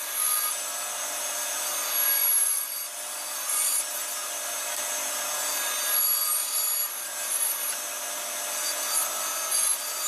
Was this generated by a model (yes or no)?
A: no